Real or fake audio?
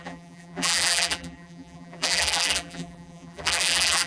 fake